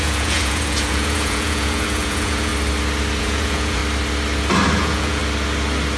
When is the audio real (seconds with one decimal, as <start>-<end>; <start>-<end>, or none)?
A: 2.5-3.2; 3.8-4.7; 5.2-6.0